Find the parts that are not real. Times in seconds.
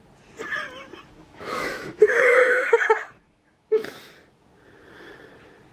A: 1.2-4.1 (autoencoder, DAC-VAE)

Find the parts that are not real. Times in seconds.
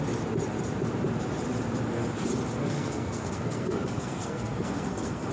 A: 2.6-5.3 (codec, SNAC)